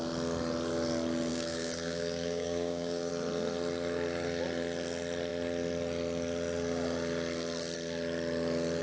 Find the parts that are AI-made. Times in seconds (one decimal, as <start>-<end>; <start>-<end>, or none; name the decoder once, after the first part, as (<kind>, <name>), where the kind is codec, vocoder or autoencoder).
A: 1.3-3.1 (codec, DAC)